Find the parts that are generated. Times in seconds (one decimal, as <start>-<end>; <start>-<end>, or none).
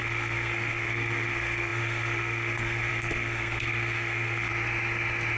0.0-4.5